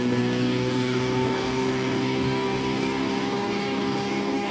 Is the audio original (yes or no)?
no